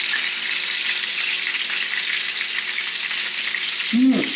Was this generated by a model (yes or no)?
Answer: no